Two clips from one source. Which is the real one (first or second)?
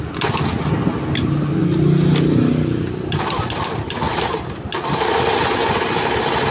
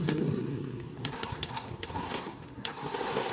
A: first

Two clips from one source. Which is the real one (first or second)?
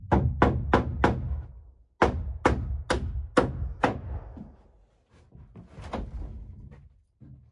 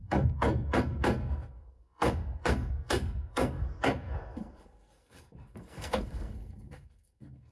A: first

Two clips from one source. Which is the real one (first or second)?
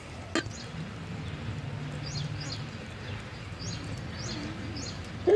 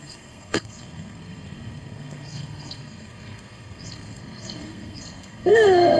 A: first